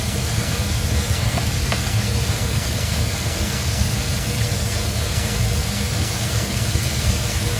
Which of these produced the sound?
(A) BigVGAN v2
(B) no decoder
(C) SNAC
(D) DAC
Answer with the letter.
C